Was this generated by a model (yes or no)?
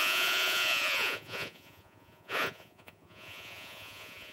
yes